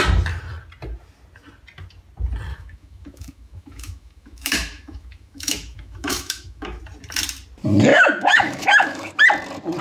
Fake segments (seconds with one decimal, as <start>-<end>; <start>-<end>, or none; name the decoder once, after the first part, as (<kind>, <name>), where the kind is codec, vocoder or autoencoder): 2.5-6.8 (autoencoder, DAC-VAE); 7.9-9.2